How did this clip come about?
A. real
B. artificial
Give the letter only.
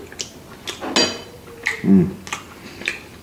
A